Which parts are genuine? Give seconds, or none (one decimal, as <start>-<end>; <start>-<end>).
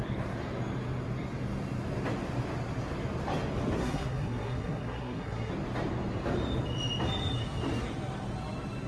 0.0-3.8; 5.5-8.9